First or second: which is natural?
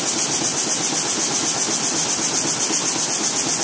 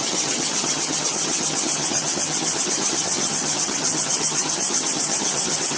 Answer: first